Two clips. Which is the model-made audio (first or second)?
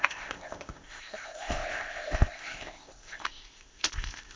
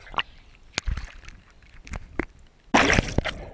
first